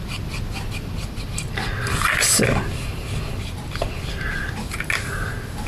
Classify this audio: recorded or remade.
recorded